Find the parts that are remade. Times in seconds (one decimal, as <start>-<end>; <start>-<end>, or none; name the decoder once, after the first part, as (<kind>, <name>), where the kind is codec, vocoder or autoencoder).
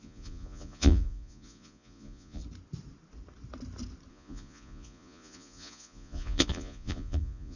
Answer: 0.0-2.4 (vocoder, Vocos); 4.1-7.6